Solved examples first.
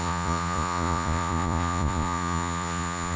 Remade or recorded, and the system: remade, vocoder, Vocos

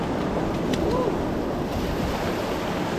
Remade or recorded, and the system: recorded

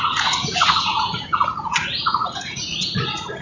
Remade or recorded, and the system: remade, vocoder, Vocos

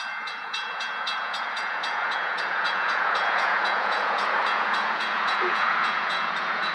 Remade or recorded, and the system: remade, vocoder, Vocos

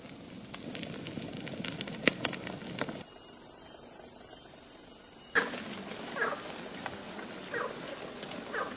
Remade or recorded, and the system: recorded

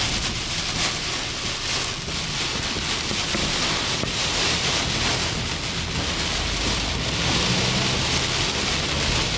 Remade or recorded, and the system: recorded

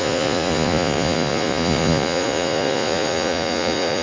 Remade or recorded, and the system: remade, vocoder, Vocos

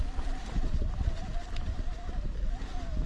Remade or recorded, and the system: recorded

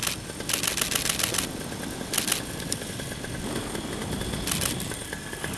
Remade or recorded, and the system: recorded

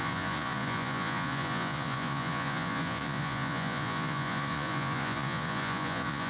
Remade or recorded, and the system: remade, vocoder, Vocos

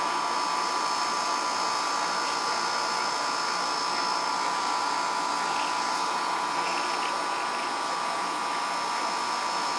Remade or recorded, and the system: remade, vocoder, Vocos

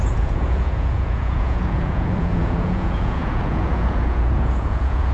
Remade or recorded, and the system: remade, vocoder, Vocos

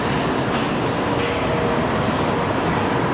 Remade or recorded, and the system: recorded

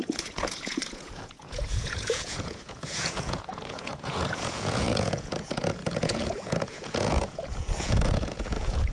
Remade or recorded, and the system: remade, vocoder, Vocos